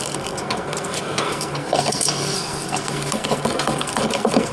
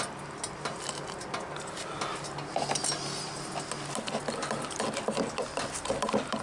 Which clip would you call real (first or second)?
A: second